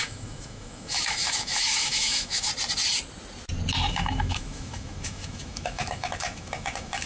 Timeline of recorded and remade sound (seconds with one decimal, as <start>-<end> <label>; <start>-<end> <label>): 0.0-2.5 remade; 2.5-3.9 recorded; 3.9-7.1 remade